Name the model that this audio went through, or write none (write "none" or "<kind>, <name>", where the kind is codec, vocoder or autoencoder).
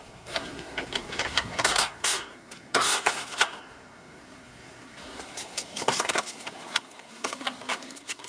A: codec, SNAC